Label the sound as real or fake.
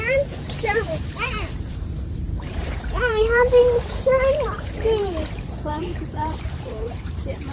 fake